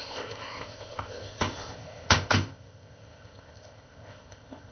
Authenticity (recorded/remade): remade